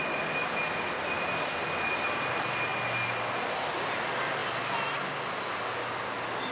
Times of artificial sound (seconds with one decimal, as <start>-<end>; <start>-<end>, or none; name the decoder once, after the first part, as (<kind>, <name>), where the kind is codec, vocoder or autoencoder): none